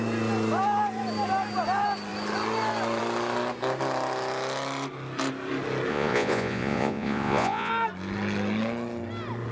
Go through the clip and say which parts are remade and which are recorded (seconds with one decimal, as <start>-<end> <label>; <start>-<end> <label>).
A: 0.0-5.9 recorded; 5.9-7.7 remade; 7.7-9.5 recorded